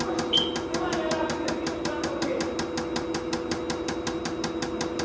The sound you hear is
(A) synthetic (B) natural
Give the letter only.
B